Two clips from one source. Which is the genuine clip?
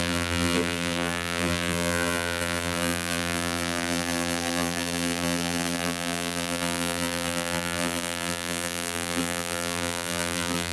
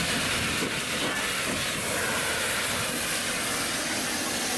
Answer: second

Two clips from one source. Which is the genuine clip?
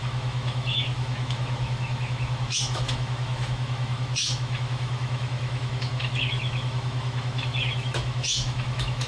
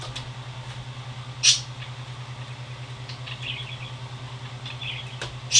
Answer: second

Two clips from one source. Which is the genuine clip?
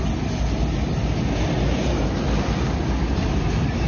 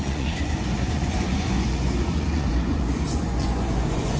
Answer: first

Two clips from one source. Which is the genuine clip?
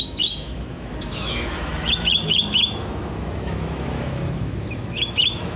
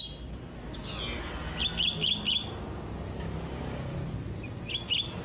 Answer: second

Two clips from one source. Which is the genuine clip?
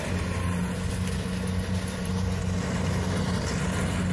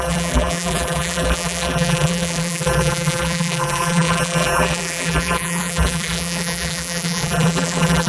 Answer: first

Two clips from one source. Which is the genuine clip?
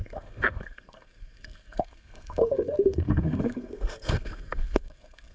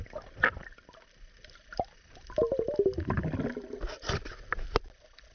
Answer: second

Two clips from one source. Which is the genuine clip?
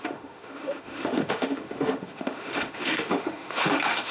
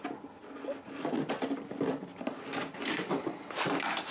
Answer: second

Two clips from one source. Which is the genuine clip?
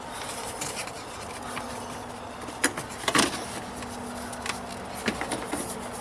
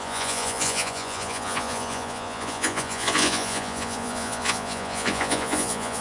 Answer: first